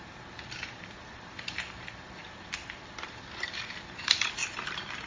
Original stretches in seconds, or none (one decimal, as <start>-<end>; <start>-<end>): 4.4-5.1